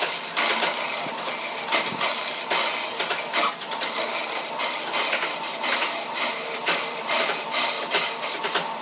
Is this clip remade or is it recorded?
recorded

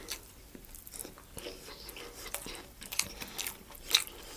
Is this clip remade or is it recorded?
remade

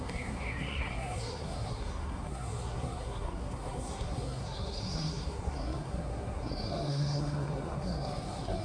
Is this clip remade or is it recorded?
remade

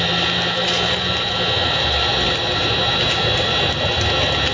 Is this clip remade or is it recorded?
recorded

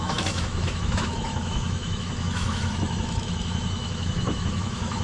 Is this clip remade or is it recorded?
remade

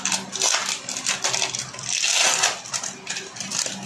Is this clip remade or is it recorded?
recorded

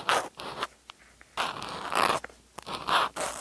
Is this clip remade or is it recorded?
recorded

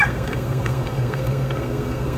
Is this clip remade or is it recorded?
remade